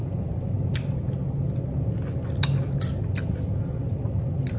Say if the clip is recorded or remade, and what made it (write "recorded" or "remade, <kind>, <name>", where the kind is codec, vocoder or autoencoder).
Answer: recorded